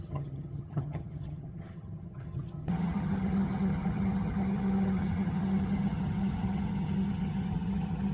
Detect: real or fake fake